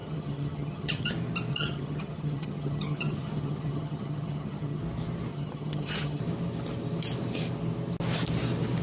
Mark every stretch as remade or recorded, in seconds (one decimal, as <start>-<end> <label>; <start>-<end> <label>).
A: 0.0-1.1 remade; 1.1-1.5 recorded; 1.5-4.8 remade; 4.8-5.3 recorded; 5.3-6.2 remade; 6.2-8.8 recorded